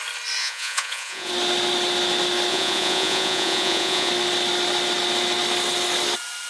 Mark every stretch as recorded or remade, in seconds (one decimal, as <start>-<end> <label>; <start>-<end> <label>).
0.0-0.4 recorded; 0.4-1.3 remade; 1.3-2.5 recorded; 2.5-4.1 remade; 4.1-6.5 recorded